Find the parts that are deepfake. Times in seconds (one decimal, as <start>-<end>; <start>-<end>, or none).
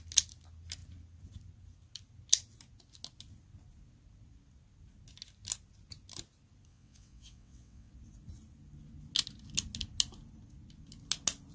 6.7-7.9